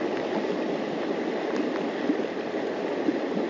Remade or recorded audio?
recorded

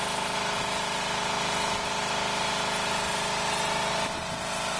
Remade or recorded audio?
recorded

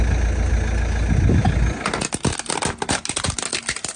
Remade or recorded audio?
recorded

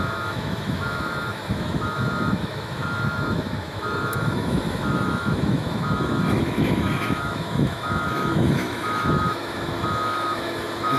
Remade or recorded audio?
remade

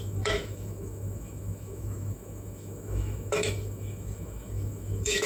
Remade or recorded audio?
remade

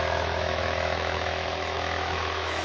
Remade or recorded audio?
remade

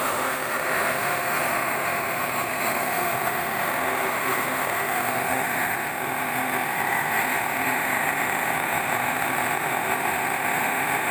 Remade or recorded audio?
remade